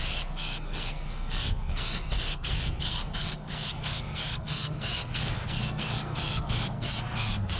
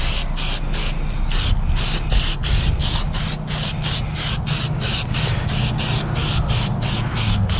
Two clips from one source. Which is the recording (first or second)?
second